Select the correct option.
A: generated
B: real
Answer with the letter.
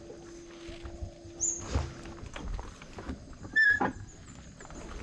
B